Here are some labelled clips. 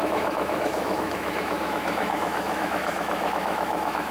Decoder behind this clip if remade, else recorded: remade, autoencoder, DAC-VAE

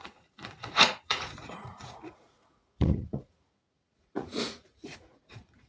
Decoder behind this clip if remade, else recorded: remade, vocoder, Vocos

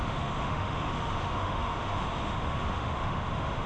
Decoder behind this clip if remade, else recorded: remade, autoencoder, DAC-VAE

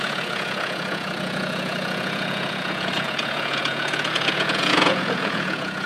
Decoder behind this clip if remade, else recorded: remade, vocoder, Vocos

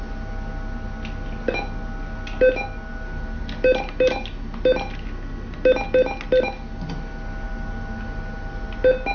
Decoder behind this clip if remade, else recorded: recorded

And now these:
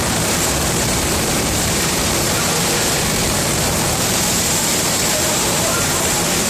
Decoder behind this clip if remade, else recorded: remade, vocoder, BigVGAN v2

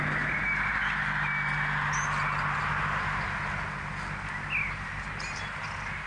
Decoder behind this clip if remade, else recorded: recorded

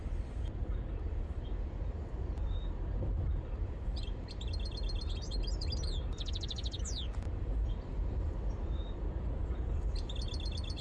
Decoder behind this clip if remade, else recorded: remade, vocoder, BigVGAN v2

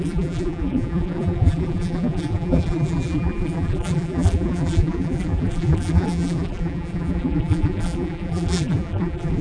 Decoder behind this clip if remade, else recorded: remade, vocoder, BigVGAN v2